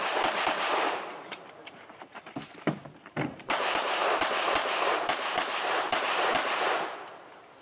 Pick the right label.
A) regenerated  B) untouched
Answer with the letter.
A